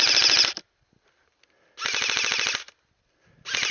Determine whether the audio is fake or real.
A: real